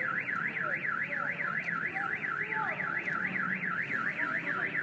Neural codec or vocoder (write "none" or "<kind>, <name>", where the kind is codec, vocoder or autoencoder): none